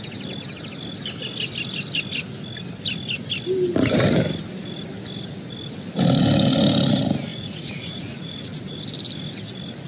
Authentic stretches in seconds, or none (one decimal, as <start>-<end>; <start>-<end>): 0.0-7.3; 8.8-9.9